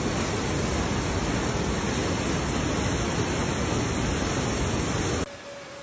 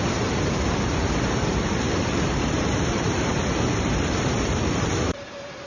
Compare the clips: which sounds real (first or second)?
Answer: first